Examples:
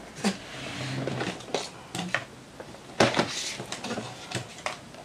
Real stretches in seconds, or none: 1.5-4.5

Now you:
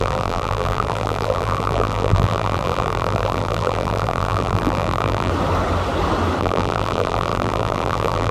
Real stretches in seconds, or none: 5.3-6.4

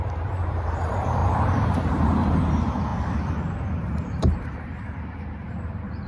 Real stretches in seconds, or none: 2.9-3.5

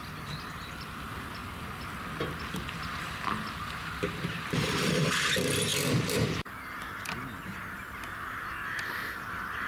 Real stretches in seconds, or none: 1.4-2.5

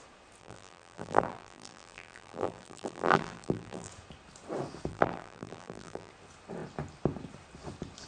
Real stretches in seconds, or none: 0.0-0.4; 3.9-4.9; 6.1-8.1

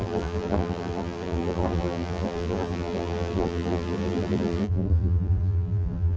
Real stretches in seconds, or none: none

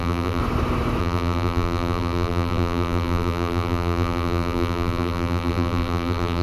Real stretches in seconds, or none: 0.4-1.0

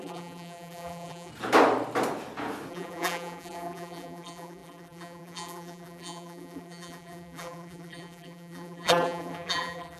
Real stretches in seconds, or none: 1.3-2.7